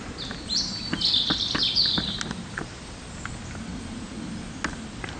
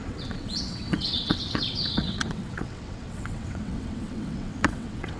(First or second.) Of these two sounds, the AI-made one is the second